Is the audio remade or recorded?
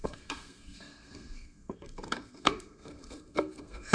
remade